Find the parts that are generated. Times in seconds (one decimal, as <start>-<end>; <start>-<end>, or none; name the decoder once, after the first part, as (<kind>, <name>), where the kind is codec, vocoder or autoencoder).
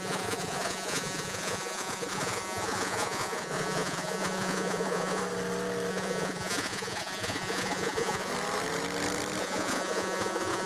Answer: 0.0-5.2 (vocoder, Vocos); 5.9-8.3; 9.4-10.7